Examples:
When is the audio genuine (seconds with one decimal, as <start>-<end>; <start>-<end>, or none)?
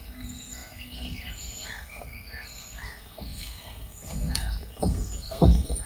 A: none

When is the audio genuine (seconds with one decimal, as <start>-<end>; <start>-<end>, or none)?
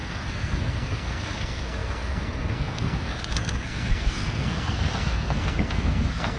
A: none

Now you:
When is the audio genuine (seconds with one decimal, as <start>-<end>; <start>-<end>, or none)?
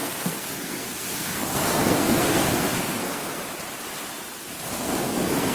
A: 3.4-4.7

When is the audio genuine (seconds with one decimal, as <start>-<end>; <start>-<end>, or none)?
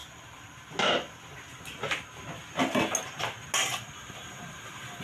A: 0.0-5.0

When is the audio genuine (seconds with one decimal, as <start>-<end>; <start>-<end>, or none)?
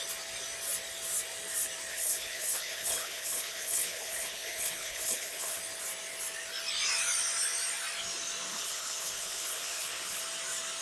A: 0.0-1.9; 5.6-8.5; 10.2-10.8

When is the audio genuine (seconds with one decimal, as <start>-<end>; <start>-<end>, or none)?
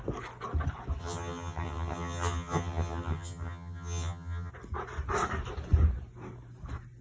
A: 0.0-1.0; 4.5-7.0